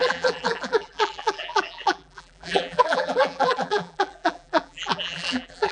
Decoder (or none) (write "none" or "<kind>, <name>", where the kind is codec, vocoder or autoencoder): vocoder, BigVGAN v2